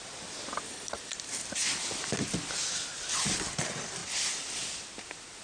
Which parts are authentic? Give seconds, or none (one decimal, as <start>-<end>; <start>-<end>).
0.0-4.0; 4.9-5.4

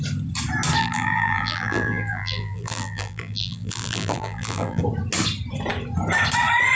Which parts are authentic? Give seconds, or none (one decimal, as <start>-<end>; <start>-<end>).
0.0-0.8; 4.8-6.7